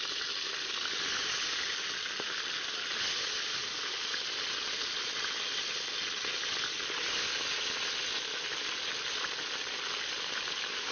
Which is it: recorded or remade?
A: recorded